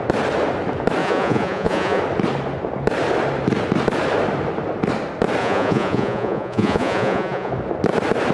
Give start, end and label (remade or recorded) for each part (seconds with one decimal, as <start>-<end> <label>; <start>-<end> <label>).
0.0-1.0 recorded; 1.0-2.0 remade; 2.0-5.4 recorded; 5.4-7.5 remade; 7.5-8.3 recorded

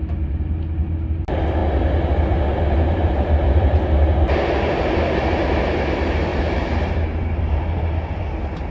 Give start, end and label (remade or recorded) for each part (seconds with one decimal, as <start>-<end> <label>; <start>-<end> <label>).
0.0-2.5 recorded; 2.5-3.8 remade; 3.8-6.3 recorded; 6.3-8.2 remade; 8.2-8.7 recorded

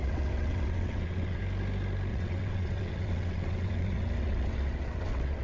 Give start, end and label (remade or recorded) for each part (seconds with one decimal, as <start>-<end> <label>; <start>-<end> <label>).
0.0-1.4 remade; 1.4-2.1 recorded; 2.1-5.4 remade